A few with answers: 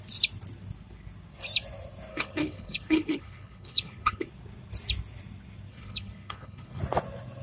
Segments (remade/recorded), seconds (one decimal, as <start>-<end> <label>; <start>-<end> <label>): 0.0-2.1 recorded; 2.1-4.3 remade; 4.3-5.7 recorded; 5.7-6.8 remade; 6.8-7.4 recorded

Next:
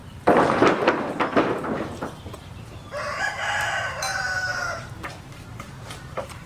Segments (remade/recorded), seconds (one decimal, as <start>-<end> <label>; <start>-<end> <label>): 0.0-1.3 recorded; 1.3-4.1 remade; 4.1-5.5 recorded; 5.5-6.5 remade

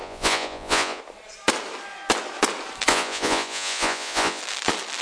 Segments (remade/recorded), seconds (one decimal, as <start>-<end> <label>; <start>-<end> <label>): 0.0-1.0 remade; 1.0-2.9 recorded; 2.9-4.4 remade; 4.4-5.0 recorded

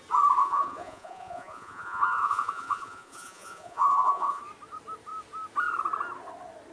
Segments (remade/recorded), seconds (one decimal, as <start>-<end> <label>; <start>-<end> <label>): 0.0-0.4 recorded; 0.4-4.4 remade; 4.4-6.7 recorded

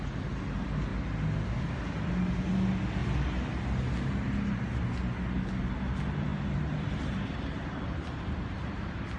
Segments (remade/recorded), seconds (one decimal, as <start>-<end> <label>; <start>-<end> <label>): 0.0-6.3 recorded; 6.3-9.2 remade

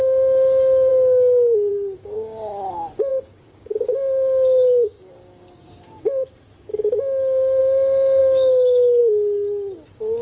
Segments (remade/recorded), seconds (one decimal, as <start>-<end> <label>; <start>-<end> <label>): 0.0-0.9 remade; 0.9-1.7 recorded; 1.7-9.0 remade; 9.0-10.2 recorded